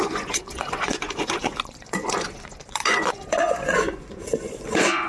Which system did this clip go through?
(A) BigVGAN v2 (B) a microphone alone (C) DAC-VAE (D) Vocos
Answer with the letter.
D